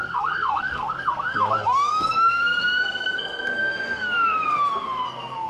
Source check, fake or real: fake